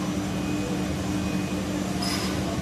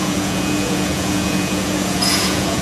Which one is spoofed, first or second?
second